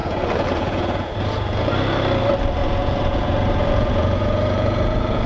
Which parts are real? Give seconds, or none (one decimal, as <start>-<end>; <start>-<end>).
1.7-2.6